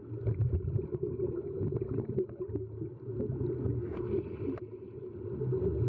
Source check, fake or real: real